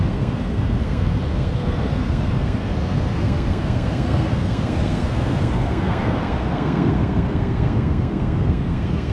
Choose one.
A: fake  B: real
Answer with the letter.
A